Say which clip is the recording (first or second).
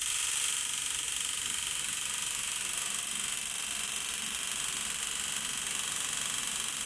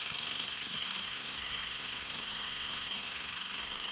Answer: first